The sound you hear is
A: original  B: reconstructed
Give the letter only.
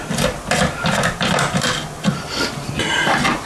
A